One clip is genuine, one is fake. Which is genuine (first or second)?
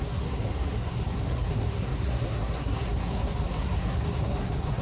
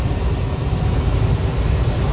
second